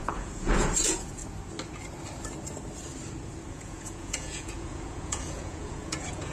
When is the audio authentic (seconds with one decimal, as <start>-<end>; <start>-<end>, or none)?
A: 1.2-3.5